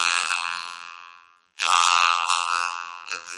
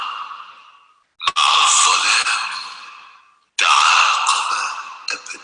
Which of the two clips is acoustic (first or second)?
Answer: second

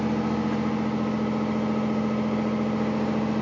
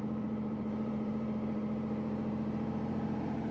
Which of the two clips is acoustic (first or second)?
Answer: first